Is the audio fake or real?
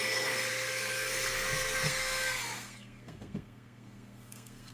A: fake